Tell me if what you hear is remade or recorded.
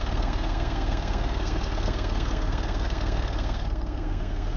remade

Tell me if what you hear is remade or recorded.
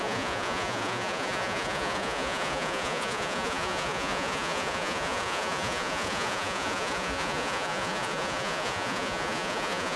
remade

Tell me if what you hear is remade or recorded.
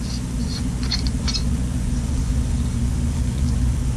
remade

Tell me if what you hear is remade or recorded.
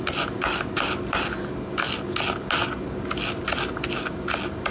recorded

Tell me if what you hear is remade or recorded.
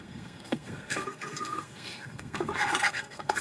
remade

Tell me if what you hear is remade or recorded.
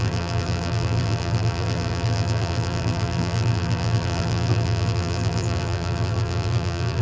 remade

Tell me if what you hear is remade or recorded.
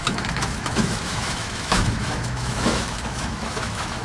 remade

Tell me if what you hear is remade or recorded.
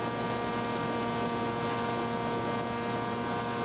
recorded